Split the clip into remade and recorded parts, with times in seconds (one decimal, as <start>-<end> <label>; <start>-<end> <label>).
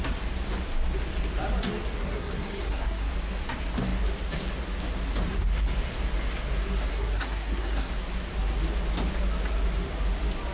0.0-2.0 recorded; 2.0-3.1 remade; 3.1-6.9 recorded; 6.9-7.9 remade; 7.9-10.5 recorded